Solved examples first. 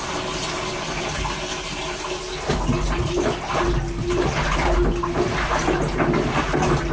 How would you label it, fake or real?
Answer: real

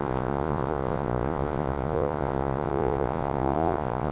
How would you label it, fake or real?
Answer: fake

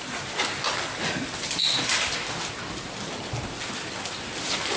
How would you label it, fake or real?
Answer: real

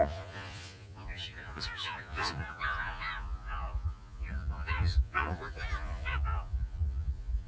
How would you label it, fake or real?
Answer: fake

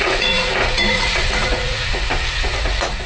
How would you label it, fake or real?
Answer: fake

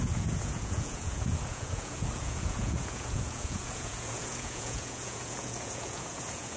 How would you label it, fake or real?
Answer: fake